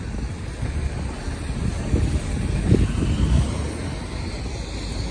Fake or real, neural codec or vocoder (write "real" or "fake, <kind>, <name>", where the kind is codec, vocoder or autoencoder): real